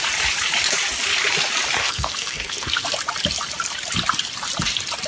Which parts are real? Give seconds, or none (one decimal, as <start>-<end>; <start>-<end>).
0.0-1.8; 2.9-5.1